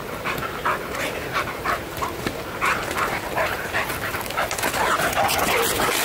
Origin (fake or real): real